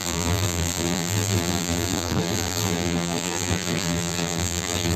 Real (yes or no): no